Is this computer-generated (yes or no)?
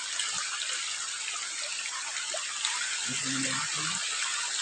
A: no